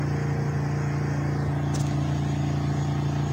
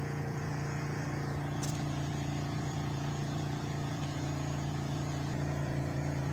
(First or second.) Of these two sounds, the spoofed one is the second